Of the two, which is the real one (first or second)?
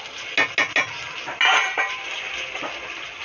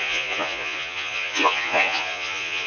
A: first